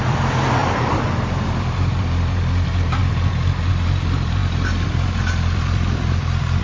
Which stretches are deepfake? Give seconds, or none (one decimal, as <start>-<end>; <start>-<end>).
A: 0.0-3.0; 3.7-6.6